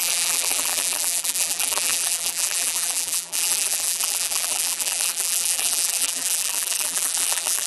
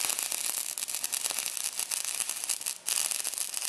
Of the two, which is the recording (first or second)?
second